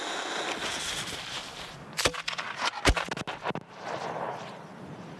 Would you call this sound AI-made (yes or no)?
no